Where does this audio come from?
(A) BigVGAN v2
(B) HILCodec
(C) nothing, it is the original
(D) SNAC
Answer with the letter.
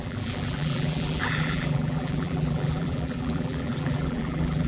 A